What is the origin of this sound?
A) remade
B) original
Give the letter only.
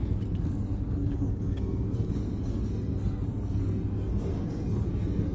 A